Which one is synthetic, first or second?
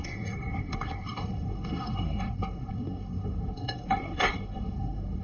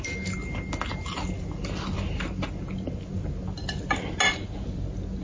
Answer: first